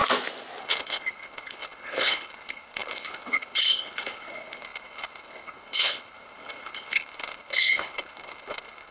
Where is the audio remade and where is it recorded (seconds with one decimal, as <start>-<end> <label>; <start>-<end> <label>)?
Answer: 0.0-0.6 recorded; 0.6-8.9 remade